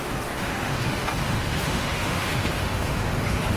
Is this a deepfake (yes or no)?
yes